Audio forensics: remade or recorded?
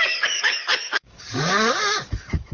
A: remade